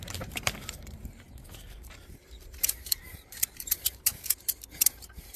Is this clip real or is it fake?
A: fake